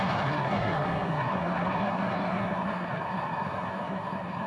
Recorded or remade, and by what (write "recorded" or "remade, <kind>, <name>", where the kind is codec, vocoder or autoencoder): remade, codec, SNAC